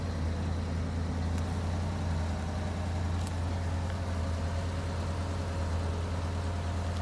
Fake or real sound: real